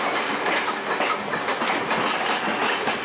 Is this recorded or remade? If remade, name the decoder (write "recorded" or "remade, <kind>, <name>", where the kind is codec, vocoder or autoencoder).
recorded